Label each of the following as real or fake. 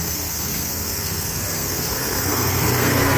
fake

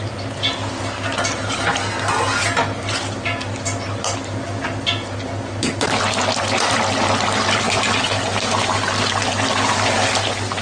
real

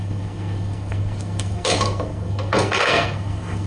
fake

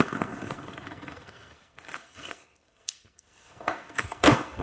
fake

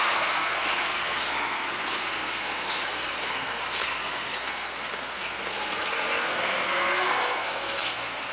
fake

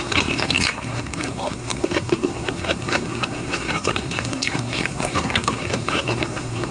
fake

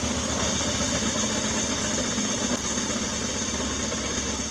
real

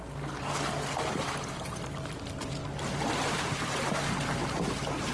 real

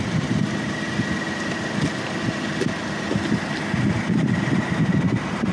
real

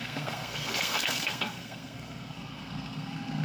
fake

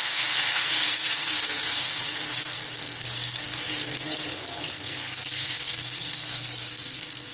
fake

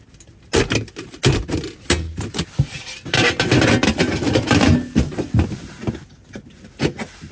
real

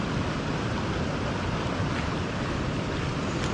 real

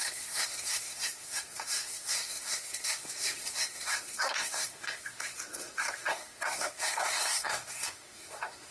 fake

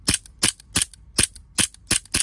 real